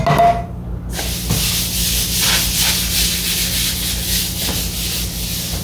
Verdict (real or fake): real